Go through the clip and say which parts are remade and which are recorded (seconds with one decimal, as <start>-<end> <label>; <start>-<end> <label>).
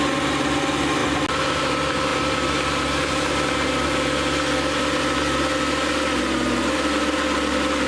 0.0-7.9 recorded